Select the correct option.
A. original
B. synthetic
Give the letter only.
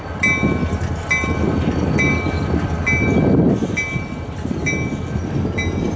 A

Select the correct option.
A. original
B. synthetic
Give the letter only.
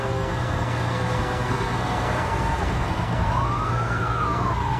B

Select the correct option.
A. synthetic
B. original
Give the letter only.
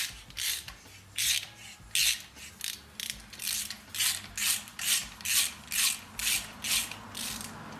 B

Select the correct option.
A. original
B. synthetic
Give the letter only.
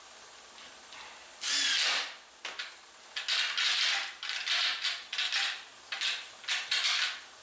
A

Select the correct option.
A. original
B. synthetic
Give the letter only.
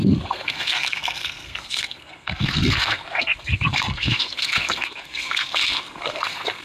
B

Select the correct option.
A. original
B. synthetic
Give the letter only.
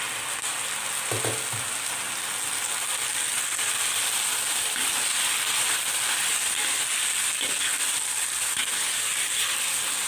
A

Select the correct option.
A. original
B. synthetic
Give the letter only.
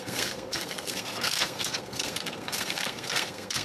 B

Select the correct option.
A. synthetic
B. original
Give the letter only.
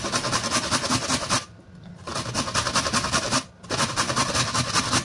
B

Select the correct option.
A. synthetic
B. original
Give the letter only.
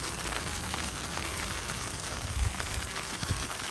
A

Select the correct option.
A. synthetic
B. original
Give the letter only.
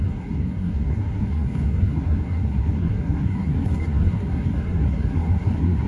A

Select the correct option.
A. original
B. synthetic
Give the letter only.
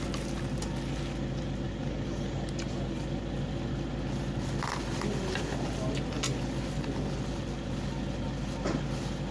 A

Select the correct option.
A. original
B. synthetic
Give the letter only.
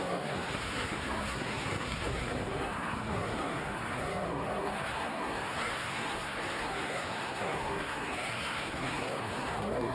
B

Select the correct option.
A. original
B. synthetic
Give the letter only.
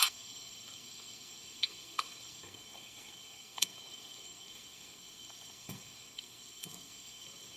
B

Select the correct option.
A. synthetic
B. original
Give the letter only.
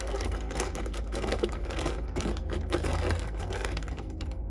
A